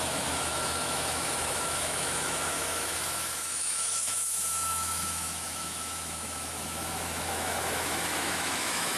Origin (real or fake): fake